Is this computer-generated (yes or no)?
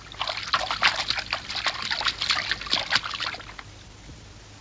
no